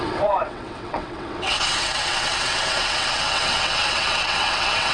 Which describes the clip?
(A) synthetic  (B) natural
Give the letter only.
A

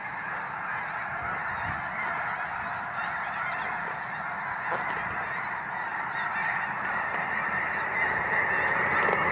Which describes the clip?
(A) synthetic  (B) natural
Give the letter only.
B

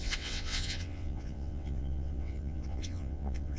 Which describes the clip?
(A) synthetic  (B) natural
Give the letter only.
A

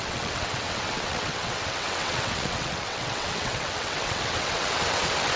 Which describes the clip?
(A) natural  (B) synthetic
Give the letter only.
B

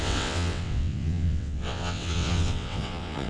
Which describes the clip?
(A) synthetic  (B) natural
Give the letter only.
A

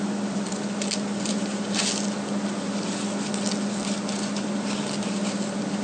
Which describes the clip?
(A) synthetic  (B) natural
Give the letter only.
B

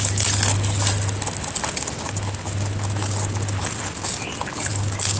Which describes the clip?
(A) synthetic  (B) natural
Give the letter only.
B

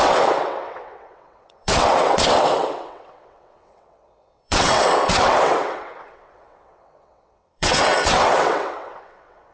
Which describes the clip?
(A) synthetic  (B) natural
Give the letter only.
A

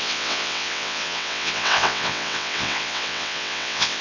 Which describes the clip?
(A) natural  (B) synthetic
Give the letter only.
B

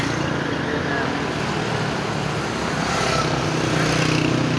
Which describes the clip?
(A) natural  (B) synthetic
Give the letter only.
A